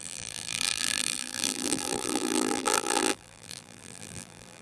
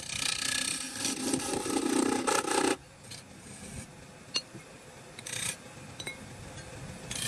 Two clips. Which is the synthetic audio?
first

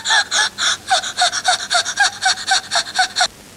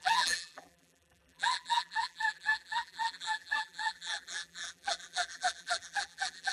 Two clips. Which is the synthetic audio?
second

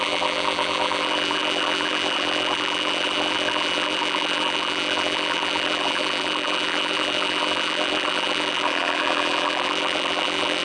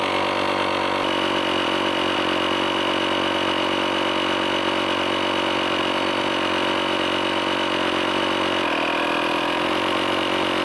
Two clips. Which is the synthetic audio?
first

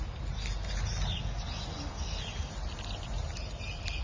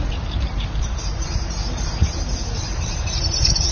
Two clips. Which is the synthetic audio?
second